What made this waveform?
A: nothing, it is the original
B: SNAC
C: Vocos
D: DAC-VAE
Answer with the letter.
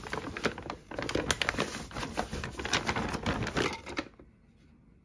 A